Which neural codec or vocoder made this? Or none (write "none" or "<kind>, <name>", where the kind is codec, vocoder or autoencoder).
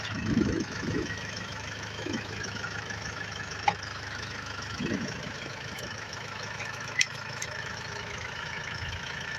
autoencoder, DAC-VAE